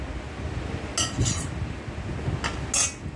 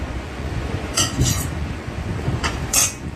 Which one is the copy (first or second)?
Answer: second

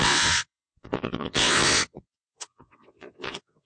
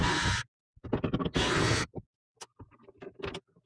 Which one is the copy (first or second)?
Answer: first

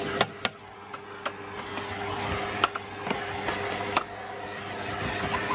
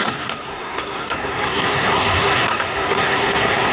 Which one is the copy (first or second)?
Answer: second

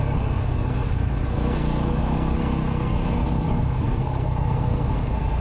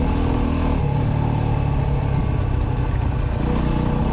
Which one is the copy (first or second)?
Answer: first